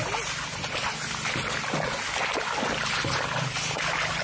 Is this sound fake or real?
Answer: real